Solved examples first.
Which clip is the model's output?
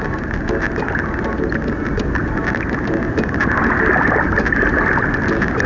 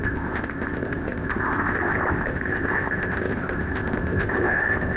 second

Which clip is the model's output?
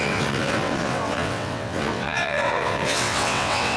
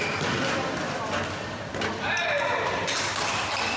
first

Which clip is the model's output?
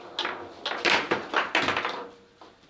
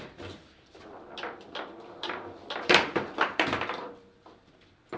second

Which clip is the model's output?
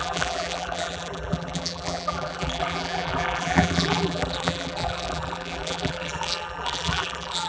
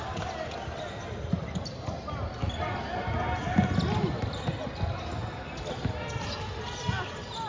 first